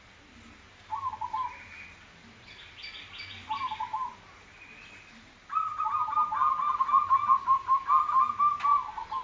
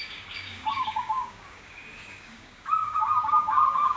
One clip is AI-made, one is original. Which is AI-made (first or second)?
second